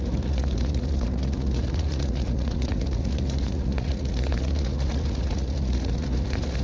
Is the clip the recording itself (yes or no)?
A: no